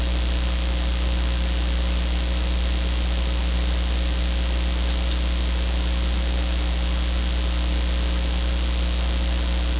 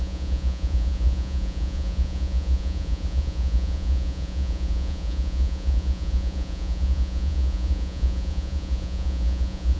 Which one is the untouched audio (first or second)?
first